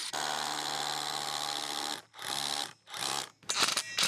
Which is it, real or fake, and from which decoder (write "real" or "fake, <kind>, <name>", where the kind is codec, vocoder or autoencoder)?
real